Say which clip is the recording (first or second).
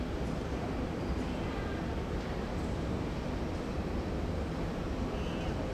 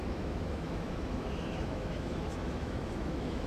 first